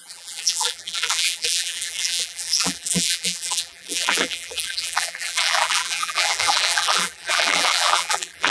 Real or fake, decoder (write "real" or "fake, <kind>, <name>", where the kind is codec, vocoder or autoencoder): fake, vocoder, BigVGAN v2